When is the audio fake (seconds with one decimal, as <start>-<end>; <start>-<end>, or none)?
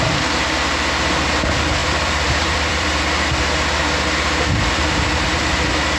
1.8-3.0